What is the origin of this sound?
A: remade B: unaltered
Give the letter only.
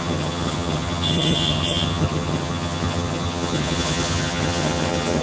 A